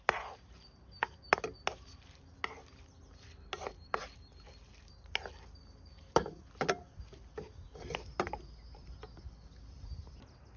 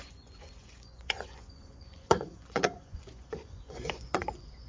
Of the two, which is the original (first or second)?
first